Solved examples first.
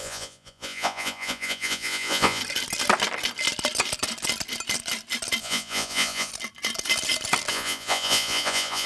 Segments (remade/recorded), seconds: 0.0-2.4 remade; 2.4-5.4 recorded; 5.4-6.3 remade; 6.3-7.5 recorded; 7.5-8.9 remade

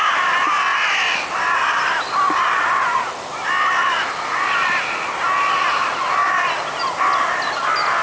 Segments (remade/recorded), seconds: 0.0-8.0 recorded

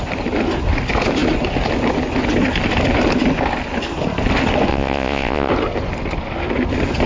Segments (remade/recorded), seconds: 0.0-4.7 recorded; 4.7-5.5 remade; 5.5-7.1 recorded

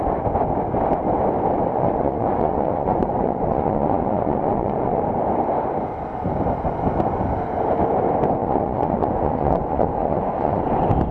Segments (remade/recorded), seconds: 0.0-1.7 recorded; 1.7-5.0 remade; 5.0-8.4 recorded; 8.4-10.7 remade; 10.7-11.1 recorded